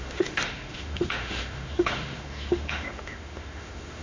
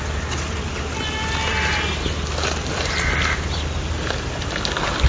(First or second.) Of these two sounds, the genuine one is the second